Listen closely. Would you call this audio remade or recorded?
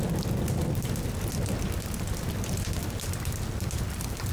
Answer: recorded